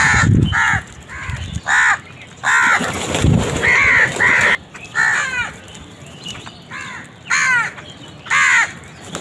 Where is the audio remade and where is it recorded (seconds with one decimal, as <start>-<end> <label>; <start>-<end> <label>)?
0.0-0.9 remade; 0.9-9.2 recorded